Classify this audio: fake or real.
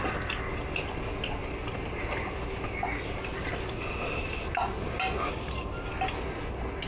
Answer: real